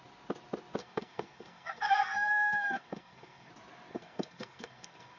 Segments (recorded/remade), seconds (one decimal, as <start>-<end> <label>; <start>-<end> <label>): 0.0-0.8 recorded; 0.8-3.5 remade; 3.5-3.9 recorded; 3.9-5.2 remade